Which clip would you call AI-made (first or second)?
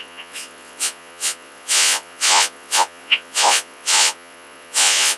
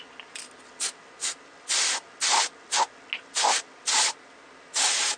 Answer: first